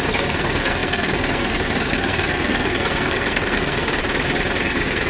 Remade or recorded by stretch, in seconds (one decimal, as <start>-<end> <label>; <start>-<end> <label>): 0.0-4.0 remade; 4.0-4.6 recorded; 4.6-5.1 remade